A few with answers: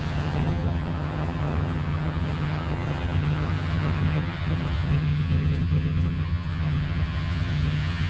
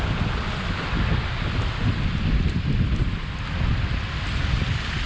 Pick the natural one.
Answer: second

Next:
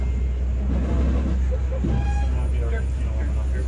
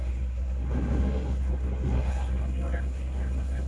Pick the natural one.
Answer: first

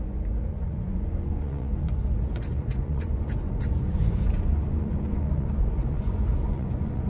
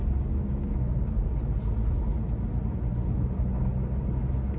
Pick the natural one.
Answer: second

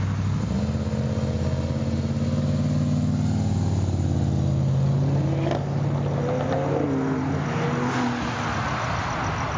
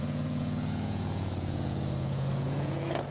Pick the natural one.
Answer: first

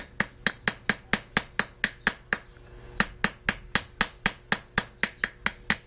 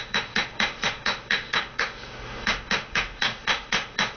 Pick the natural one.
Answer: first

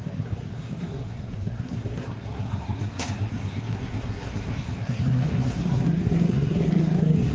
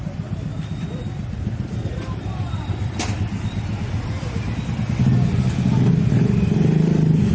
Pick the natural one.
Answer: second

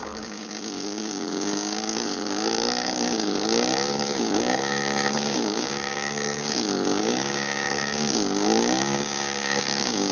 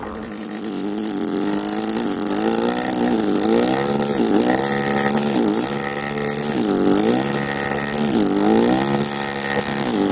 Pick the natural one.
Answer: second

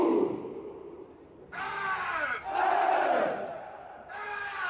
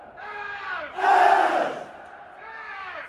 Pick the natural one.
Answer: second